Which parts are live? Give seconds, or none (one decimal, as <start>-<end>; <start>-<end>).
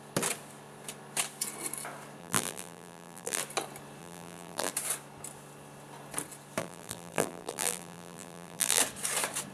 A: 0.0-2.2; 3.4-4.0; 4.7-6.6; 8.8-9.5